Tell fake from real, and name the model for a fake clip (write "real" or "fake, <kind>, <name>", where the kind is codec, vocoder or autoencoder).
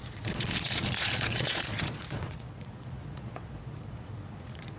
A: fake, vocoder, Vocos